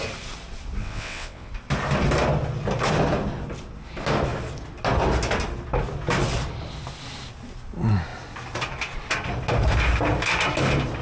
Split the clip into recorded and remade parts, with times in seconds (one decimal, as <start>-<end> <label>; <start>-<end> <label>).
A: 0.0-0.8 recorded; 0.8-1.5 remade; 1.5-11.0 recorded